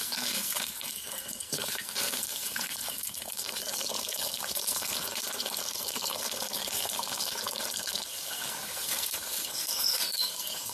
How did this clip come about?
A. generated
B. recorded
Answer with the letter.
A